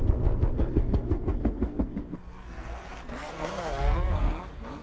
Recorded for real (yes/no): no